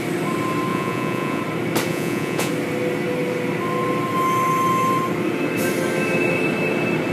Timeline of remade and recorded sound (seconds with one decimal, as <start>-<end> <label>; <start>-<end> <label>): 0.0-0.7 recorded; 0.7-1.4 remade; 1.4-1.9 recorded; 1.9-2.5 remade; 2.5-7.1 recorded